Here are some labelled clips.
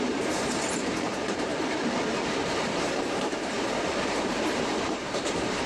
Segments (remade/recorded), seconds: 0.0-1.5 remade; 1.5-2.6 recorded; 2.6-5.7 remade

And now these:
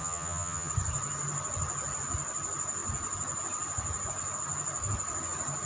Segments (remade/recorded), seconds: 0.0-0.7 remade; 0.7-5.7 recorded

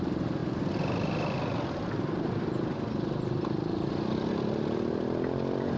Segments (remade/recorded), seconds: 0.0-5.8 recorded

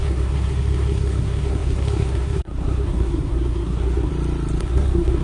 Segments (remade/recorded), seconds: 0.0-4.1 remade; 4.1-4.6 recorded; 4.6-5.2 remade

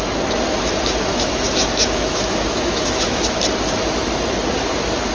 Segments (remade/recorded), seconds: 0.0-1.1 recorded; 1.1-3.4 remade; 3.4-5.1 recorded